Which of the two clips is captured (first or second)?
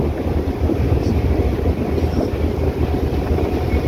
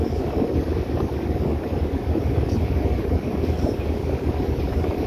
first